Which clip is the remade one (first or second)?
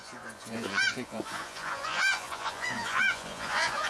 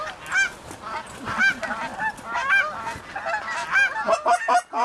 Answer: first